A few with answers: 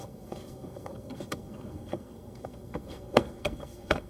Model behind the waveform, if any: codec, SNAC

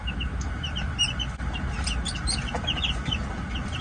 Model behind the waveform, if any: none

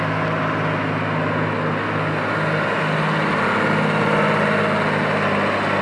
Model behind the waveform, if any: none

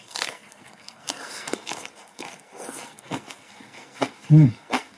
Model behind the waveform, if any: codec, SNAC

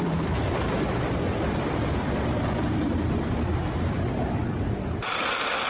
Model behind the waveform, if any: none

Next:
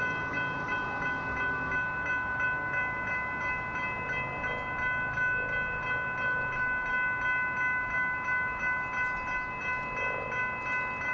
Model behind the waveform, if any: none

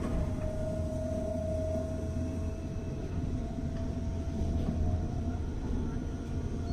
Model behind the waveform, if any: none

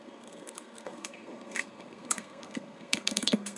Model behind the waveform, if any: codec, SNAC